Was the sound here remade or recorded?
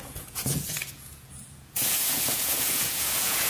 remade